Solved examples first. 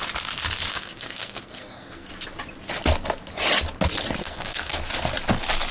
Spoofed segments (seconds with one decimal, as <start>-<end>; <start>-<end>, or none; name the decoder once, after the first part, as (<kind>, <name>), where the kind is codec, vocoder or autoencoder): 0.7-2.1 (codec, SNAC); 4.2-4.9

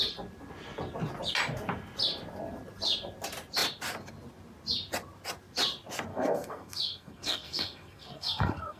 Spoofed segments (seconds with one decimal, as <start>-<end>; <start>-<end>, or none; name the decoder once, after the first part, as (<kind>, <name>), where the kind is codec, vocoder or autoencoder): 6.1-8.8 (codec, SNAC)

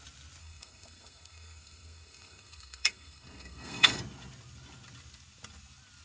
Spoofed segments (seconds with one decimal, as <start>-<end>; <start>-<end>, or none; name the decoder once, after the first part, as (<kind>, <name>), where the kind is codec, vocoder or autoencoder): 0.4-4.0 (codec, SNAC)

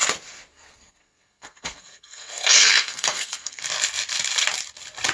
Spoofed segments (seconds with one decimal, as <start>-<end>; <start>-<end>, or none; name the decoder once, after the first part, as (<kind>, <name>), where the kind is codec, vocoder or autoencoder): 0.5-3.6 (codec, SNAC)